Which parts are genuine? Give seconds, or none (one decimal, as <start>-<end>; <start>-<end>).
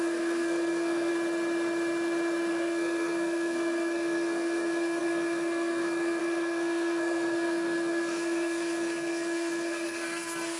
1.1-2.5